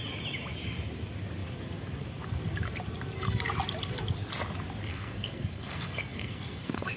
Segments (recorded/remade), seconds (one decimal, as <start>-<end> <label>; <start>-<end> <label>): 0.0-4.9 recorded; 4.9-7.0 remade